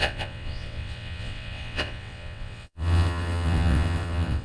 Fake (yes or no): yes